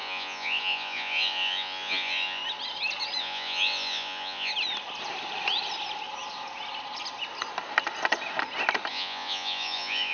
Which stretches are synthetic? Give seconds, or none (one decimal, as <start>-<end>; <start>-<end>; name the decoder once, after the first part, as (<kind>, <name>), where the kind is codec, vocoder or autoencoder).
0.0-2.4 (vocoder, Vocos); 3.2-4.5; 8.9-10.1